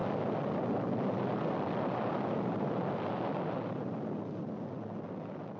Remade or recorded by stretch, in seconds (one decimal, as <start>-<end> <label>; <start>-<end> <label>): 0.0-5.6 recorded